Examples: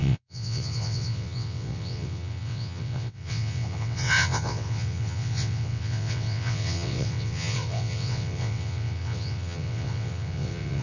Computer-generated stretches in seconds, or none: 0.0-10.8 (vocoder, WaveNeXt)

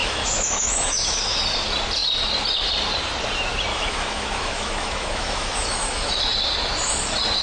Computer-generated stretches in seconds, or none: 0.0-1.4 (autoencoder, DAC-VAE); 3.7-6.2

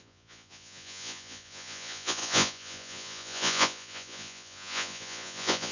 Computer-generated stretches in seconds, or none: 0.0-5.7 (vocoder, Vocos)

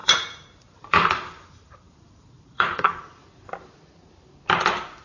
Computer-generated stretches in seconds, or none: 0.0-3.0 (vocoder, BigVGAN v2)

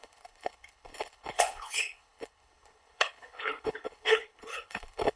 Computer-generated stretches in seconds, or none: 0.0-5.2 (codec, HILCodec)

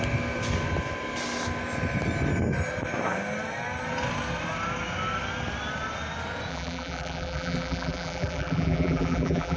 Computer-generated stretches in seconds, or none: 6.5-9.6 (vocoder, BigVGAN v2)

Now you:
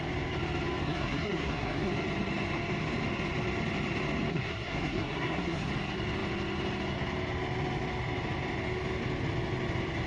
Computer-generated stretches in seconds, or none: 0.8-1.9 (codec, SNAC); 4.3-5.7